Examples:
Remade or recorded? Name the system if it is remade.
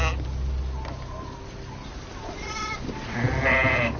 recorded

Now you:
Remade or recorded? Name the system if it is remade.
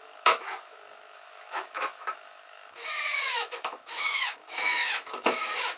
remade, autoencoder, DAC-VAE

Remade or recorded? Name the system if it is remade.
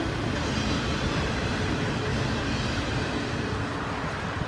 recorded